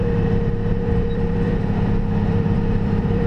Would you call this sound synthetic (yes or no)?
yes